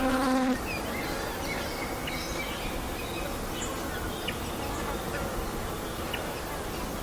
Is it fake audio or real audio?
real